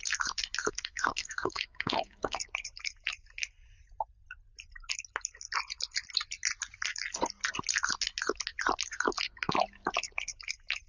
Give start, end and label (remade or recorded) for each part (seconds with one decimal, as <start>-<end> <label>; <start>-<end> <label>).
0.0-0.6 recorded; 0.6-2.4 remade; 2.4-10.9 recorded